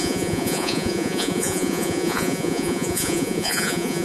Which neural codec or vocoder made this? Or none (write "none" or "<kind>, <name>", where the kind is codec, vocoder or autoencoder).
vocoder, Vocos